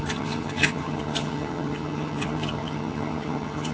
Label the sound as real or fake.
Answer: fake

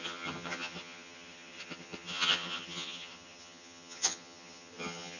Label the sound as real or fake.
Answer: fake